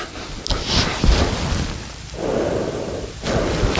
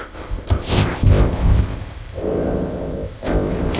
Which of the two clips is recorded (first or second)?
first